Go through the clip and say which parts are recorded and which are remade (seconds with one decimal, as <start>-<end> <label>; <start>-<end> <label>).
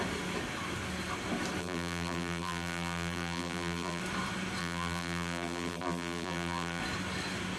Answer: 0.0-1.6 recorded; 1.6-4.0 remade; 4.0-4.6 recorded; 4.6-6.8 remade; 6.8-7.6 recorded